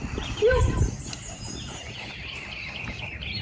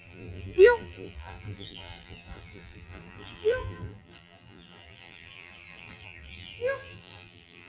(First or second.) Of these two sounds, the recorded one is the first